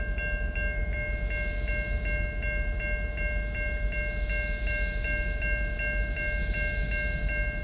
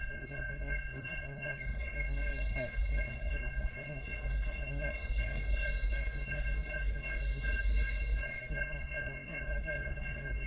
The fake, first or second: second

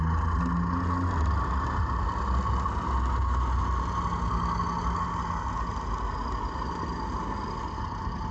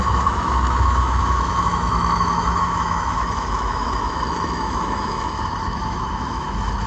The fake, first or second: second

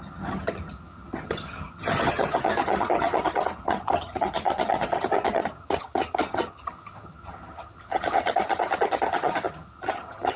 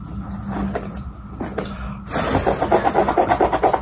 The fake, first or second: first